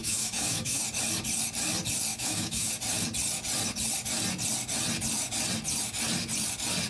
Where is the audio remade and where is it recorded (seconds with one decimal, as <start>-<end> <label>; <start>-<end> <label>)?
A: 0.0-0.8 remade; 0.8-2.1 recorded; 2.1-2.7 remade; 2.7-6.9 recorded